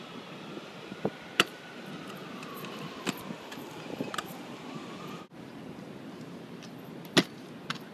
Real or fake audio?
real